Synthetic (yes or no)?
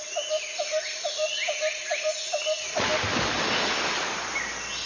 no